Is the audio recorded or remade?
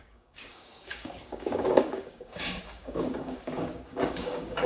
remade